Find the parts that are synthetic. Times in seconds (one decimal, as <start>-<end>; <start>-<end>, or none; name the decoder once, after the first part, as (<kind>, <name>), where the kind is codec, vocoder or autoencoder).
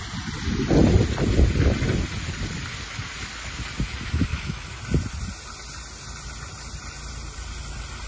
4.3-4.8 (autoencoder, DAC-VAE)